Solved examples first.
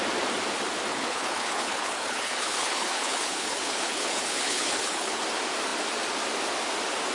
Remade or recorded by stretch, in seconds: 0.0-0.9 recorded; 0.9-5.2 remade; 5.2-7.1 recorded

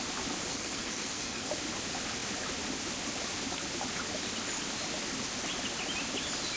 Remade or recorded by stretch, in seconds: 0.0-0.5 recorded; 0.5-1.5 remade; 1.5-6.6 recorded